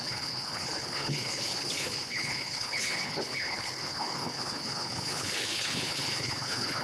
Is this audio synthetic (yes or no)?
yes